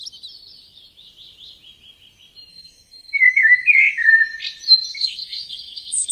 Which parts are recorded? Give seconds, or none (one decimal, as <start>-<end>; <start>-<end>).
0.0-2.5; 4.1-4.9